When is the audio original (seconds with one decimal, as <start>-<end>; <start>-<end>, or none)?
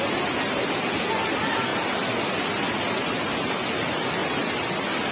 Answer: 0.0-5.1